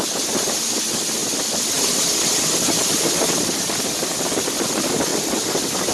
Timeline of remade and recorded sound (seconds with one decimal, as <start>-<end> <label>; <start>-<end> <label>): 0.0-5.9 recorded